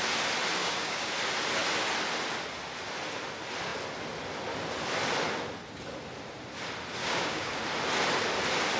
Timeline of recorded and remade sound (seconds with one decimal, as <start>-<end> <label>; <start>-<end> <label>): 0.0-0.6 recorded; 0.6-1.1 remade; 1.1-7.0 recorded; 7.0-7.6 remade; 7.6-8.8 recorded